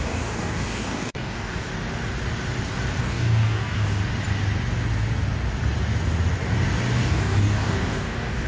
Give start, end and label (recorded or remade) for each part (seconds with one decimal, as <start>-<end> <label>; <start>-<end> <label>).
0.0-1.7 remade; 1.7-3.0 recorded; 3.0-4.0 remade; 4.0-7.0 recorded; 7.0-8.5 remade

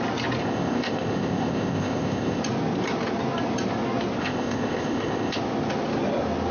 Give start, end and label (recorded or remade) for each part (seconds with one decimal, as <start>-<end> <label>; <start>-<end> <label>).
0.0-0.4 recorded; 0.4-2.4 remade; 2.4-4.2 recorded; 4.2-5.4 remade; 5.4-6.5 recorded

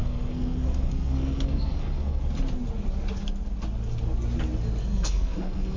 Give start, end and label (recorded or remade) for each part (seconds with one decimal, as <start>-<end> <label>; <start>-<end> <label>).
0.0-2.2 remade; 2.2-4.8 recorded; 4.8-5.8 remade

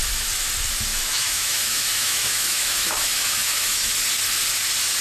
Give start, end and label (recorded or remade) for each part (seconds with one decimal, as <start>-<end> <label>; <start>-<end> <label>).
0.0-0.9 recorded; 0.9-3.9 remade; 3.9-5.0 recorded

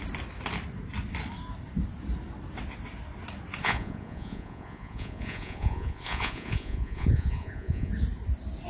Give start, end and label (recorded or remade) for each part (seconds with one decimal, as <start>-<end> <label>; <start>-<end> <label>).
0.0-3.6 recorded; 3.6-7.9 remade; 7.9-8.7 recorded

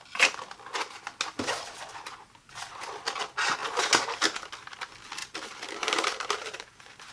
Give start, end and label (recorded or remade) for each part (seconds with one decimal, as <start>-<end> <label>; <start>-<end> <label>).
0.0-5.2 recorded; 5.2-7.1 remade

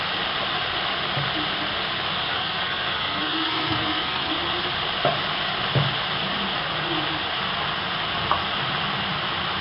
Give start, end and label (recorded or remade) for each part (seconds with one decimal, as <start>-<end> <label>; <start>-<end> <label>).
0.0-2.3 recorded; 2.3-4.3 remade; 4.3-9.6 recorded

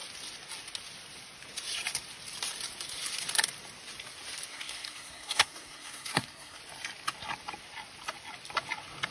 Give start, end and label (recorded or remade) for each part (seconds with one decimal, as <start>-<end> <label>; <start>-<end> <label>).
0.0-4.5 recorded; 4.5-6.6 remade; 6.6-9.1 recorded